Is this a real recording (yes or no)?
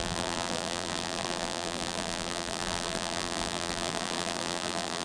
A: no